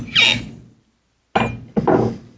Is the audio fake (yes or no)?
no